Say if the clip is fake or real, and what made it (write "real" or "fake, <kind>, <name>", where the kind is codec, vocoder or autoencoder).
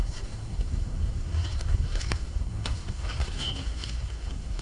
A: fake, codec, SNAC